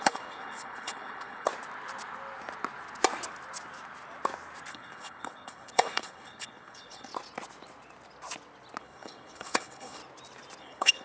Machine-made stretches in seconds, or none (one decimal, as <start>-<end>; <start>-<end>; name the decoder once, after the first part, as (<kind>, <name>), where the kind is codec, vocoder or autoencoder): 0.0-1.5 (codec, HILCodec); 4.7-7.1; 8.8-10.0; 10.6-11.0